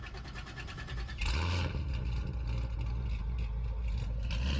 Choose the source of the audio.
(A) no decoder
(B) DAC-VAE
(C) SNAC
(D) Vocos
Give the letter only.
A